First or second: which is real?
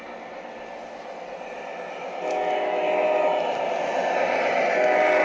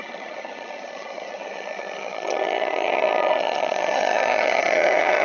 first